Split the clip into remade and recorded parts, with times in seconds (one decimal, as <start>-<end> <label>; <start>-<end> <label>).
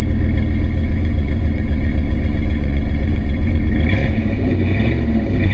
0.0-0.8 recorded; 0.8-3.6 remade; 3.6-4.0 recorded; 4.0-4.5 remade; 4.5-5.5 recorded